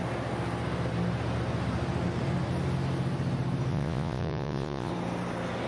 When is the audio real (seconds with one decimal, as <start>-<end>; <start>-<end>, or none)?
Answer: 0.0-3.7; 4.9-5.7